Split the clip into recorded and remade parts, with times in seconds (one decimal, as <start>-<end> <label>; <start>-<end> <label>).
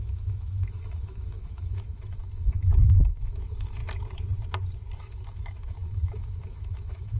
0.0-3.8 remade; 3.8-5.0 recorded; 5.0-7.2 remade